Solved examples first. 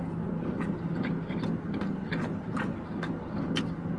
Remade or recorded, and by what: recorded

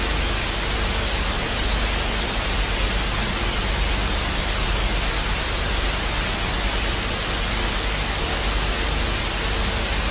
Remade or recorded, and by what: recorded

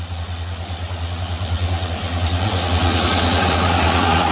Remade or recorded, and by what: remade, vocoder, Vocos